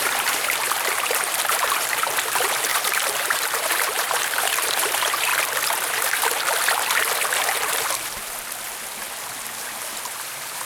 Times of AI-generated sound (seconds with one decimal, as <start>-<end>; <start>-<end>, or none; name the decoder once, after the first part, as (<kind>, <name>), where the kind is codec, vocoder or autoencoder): 0.0-5.3 (vocoder, BigVGAN v2); 9.6-10.6